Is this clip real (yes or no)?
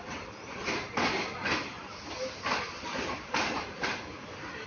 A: no